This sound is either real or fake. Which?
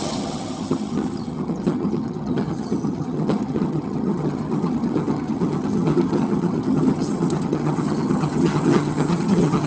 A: fake